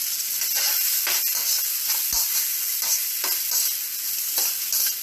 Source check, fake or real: real